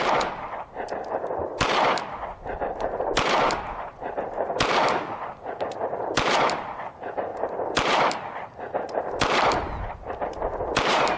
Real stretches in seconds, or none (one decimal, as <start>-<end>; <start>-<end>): 0.0-11.2